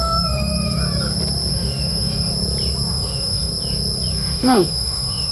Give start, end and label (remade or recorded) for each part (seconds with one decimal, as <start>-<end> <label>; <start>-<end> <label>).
0.0-0.8 remade; 0.8-1.5 recorded; 1.5-2.3 remade; 2.3-2.9 recorded; 2.9-3.5 remade; 3.5-4.1 recorded; 4.1-5.3 remade